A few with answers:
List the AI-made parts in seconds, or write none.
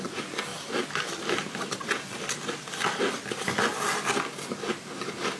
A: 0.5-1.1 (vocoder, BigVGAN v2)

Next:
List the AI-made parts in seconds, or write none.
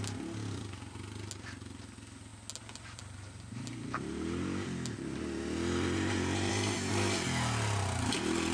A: none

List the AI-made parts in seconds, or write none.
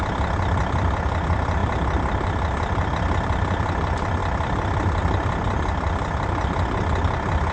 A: none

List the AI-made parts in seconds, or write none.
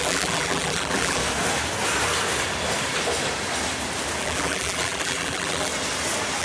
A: 0.0-1.2 (vocoder, BigVGAN v2); 4.2-5.7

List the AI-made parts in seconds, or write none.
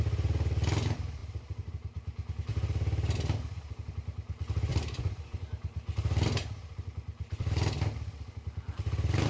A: 1.2-1.7 (vocoder, BigVGAN v2); 4.7-7.5